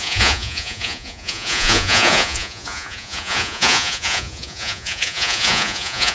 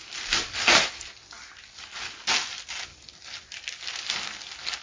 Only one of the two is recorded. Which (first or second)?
second